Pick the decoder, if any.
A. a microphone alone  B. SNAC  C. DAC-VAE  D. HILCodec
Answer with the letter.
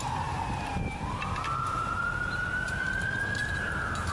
A